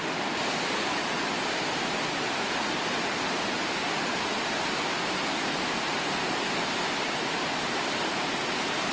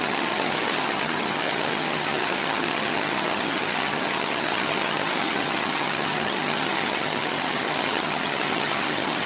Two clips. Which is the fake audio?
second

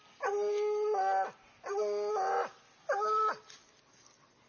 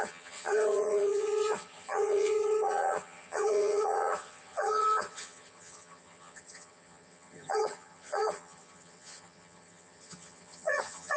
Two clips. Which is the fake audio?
second